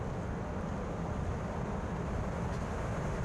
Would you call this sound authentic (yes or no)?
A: yes